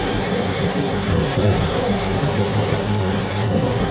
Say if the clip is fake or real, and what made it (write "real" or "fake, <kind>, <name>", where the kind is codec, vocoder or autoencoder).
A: fake, codec, SNAC